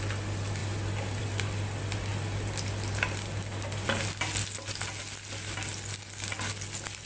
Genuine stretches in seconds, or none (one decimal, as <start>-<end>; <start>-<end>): 0.0-7.1